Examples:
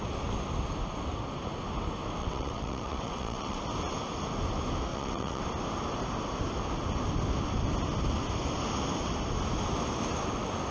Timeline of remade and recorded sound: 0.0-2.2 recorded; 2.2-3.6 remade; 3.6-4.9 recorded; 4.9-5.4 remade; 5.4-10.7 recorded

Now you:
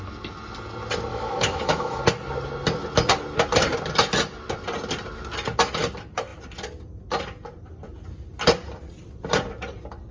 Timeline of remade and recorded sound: 0.0-1.1 recorded; 1.1-2.0 remade; 2.0-10.1 recorded

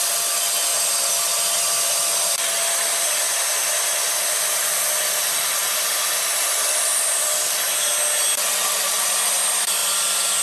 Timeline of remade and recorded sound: 0.0-10.4 recorded